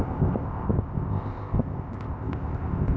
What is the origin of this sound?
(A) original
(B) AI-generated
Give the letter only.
B